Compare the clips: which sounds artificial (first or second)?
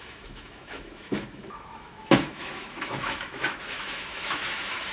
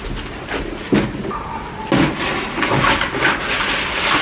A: first